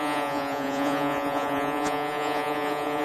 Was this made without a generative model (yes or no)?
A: no